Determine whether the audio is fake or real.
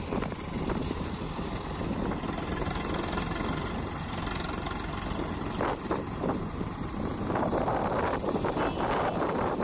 real